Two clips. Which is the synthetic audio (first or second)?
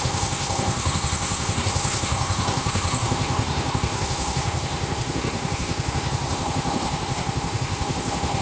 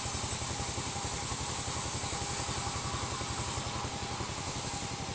first